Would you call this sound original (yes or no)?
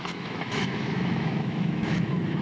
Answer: no